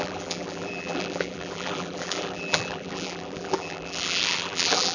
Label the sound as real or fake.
fake